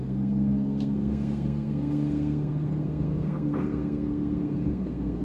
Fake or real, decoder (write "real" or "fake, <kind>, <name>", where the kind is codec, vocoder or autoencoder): fake, codec, SNAC